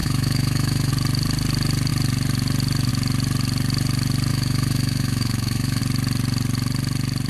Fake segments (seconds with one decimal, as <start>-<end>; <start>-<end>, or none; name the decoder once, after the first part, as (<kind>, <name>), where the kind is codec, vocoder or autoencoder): 0.0-0.9 (autoencoder, DAC-VAE); 4.3-5.8